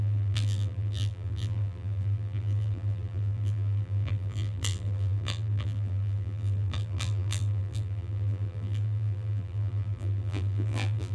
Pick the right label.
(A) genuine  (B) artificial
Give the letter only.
B